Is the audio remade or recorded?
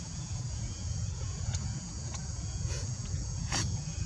remade